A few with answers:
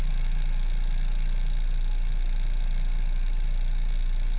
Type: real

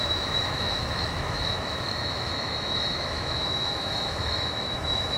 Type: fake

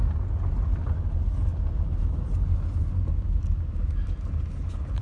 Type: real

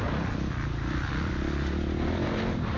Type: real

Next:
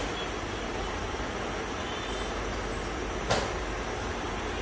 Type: real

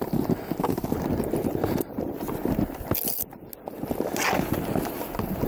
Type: real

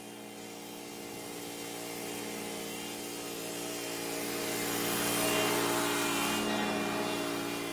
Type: real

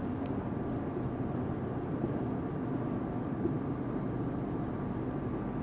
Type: real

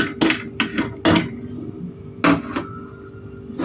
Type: real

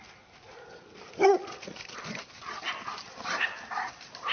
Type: real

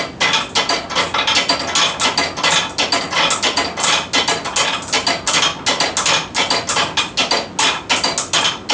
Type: real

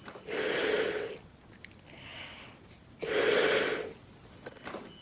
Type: real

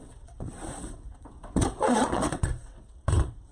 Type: fake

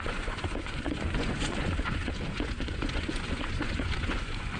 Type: fake